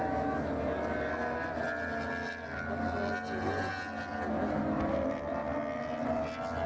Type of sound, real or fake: real